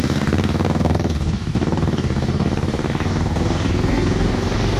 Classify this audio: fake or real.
fake